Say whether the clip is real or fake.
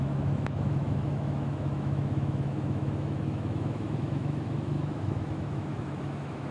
fake